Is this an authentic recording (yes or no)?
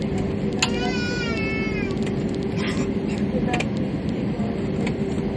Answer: yes